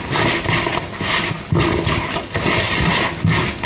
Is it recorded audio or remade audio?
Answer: recorded